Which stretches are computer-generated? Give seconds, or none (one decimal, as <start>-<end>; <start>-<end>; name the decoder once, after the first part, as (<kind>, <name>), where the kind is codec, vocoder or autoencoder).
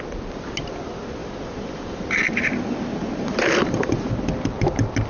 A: 1.2-4.3 (vocoder, BigVGAN v2)